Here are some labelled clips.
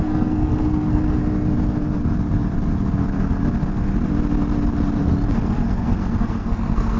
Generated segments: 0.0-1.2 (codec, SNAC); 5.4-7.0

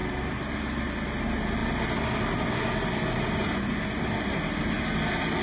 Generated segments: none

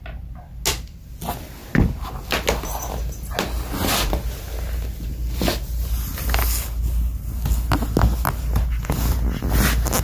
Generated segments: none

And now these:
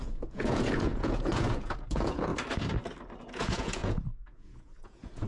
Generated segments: 0.0-2.3 (vocoder, Vocos); 3.3-5.3